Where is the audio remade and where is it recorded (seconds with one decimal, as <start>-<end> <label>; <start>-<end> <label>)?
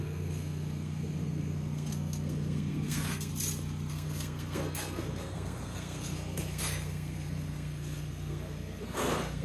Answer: 0.0-3.3 remade; 3.3-3.9 recorded; 3.9-9.4 remade